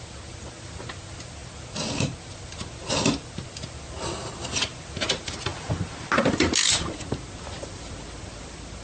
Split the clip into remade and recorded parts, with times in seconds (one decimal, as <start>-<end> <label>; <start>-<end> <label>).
0.0-8.8 recorded